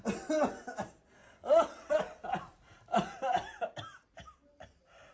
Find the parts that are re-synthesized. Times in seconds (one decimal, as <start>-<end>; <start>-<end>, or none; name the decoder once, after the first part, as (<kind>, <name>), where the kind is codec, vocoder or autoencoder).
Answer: 1.2-2.0 (vocoder, WaveNeXt)